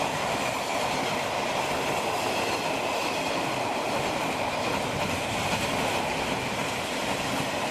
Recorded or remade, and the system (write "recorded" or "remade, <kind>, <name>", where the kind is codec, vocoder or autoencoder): recorded